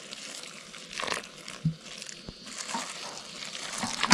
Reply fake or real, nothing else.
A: real